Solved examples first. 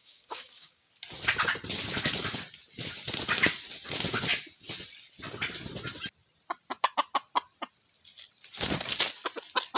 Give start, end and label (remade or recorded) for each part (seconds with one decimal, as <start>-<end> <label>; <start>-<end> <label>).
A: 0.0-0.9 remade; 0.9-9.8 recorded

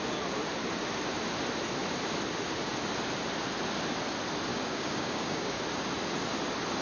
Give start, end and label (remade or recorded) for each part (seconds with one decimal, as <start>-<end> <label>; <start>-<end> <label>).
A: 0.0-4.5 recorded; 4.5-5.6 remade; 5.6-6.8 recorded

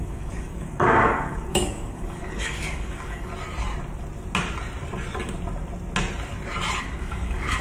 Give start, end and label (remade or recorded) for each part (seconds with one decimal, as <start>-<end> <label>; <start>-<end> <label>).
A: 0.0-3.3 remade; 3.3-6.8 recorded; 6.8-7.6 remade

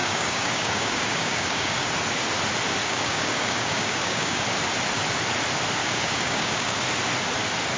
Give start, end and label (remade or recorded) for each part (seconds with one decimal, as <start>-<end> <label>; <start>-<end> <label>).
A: 0.0-1.9 remade; 1.9-2.8 recorded; 2.8-4.4 remade; 4.4-5.8 recorded; 5.8-6.8 remade; 6.8-7.8 recorded

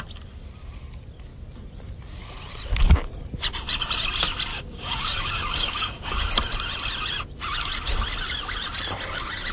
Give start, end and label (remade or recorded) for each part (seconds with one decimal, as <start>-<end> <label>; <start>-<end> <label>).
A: 0.0-4.5 recorded; 4.5-6.3 remade; 6.3-9.5 recorded

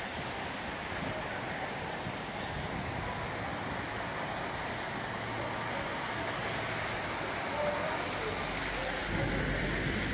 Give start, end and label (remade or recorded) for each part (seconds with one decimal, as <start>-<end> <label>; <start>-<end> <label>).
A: 0.0-10.1 recorded